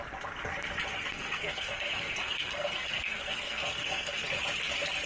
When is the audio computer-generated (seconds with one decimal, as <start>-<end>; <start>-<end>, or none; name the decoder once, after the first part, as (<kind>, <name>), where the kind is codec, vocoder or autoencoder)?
1.1-4.2 (codec, SNAC)